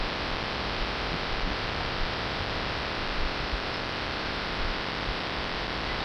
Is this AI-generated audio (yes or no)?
yes